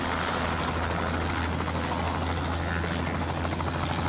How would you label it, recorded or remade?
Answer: recorded